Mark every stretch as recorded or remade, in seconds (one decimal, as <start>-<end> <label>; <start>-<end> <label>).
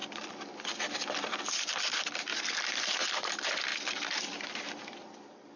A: 0.0-0.5 recorded; 0.5-2.3 remade; 2.3-2.8 recorded; 2.8-5.6 remade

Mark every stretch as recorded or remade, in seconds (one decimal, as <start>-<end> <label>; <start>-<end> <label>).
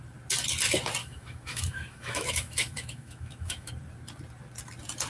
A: 0.0-1.0 recorded; 1.0-3.7 remade; 3.7-5.1 recorded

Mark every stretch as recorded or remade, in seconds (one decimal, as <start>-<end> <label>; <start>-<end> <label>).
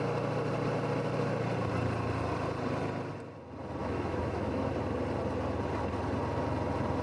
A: 0.0-3.8 recorded; 3.8-4.7 remade; 4.7-7.0 recorded